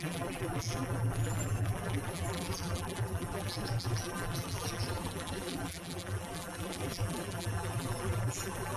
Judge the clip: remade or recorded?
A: remade